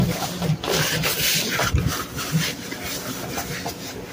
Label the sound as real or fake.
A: real